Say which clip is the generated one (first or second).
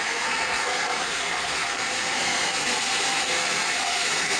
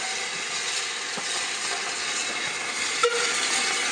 first